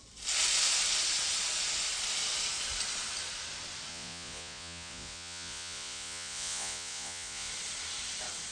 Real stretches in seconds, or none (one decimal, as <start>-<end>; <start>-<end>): 0.0-3.9; 7.5-8.5